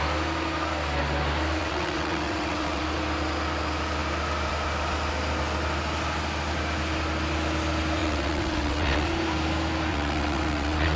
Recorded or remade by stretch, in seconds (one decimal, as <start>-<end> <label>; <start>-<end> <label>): 0.0-1.6 recorded; 1.6-2.8 remade; 2.8-8.0 recorded; 8.0-9.1 remade; 9.1-9.9 recorded; 9.9-11.0 remade